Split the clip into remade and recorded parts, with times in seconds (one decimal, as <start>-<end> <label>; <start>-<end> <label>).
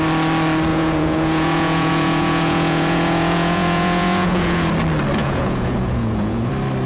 0.0-0.7 recorded; 0.7-4.7 remade; 4.7-5.2 recorded; 5.2-6.5 remade; 6.5-6.9 recorded